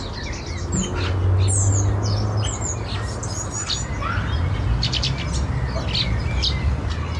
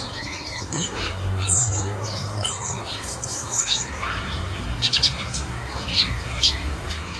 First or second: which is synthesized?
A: second